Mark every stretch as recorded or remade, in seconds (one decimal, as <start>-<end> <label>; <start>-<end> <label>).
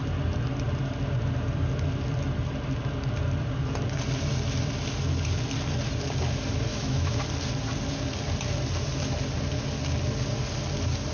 0.0-6.7 recorded; 6.7-7.2 remade; 7.2-11.1 recorded